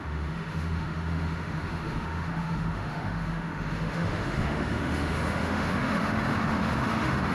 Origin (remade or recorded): remade